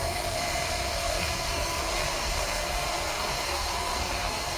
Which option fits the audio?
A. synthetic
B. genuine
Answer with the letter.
A